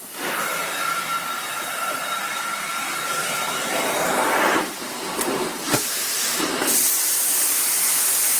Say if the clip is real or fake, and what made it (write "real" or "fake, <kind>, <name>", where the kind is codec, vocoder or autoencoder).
fake, vocoder, BigVGAN v2